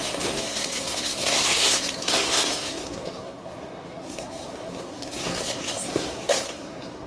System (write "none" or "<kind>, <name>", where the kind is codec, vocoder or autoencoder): codec, SNAC